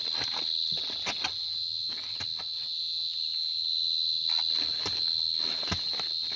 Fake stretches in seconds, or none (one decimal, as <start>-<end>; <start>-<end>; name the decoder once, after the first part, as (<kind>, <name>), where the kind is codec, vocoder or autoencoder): none